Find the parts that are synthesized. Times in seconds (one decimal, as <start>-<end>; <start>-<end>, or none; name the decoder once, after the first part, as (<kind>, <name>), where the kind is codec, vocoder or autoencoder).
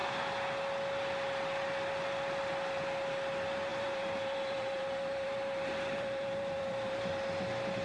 3.7-7.1 (vocoder, BigVGAN v2)